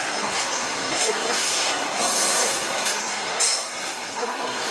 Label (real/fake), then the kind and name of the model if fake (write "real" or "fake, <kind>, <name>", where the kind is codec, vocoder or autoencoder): fake, codec, SNAC